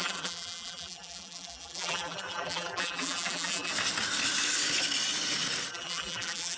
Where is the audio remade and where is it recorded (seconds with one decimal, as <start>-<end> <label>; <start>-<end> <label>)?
0.0-3.7 remade; 3.7-5.7 recorded; 5.7-6.6 remade